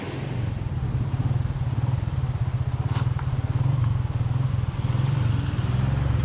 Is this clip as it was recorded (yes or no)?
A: yes